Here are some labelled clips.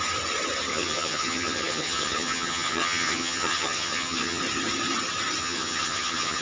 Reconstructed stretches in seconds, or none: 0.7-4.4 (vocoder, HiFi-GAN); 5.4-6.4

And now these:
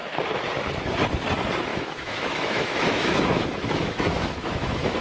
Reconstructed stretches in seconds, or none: 1.7-5.0 (autoencoder, DAC-VAE)

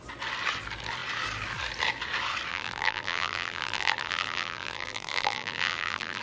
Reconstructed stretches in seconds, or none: 2.5-6.2 (vocoder, BigVGAN v2)